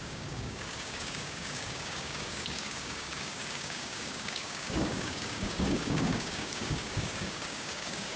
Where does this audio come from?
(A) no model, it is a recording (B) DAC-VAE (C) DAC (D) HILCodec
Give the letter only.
C